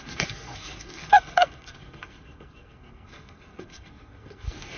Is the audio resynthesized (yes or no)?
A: yes